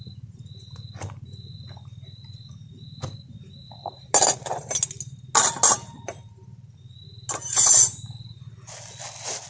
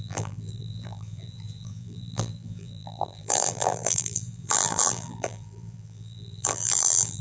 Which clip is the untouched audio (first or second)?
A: first